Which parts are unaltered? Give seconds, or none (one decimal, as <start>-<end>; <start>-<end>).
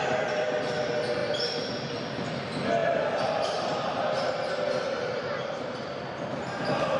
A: 0.0-1.2; 1.7-2.8; 6.4-7.0